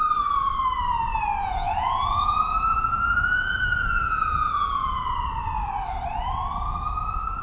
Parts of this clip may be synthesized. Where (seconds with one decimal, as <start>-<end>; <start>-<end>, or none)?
1.4-5.0